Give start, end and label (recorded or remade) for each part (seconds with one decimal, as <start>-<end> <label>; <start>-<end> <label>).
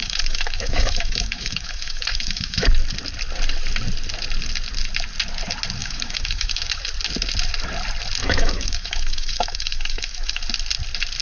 0.0-2.7 remade; 2.7-5.8 recorded; 5.8-6.8 remade; 6.8-8.2 recorded; 8.2-10.4 remade; 10.4-11.2 recorded